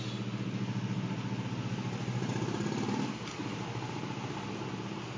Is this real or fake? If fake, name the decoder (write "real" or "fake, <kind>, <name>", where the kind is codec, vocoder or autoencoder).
real